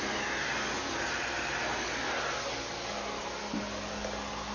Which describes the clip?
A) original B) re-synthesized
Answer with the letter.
A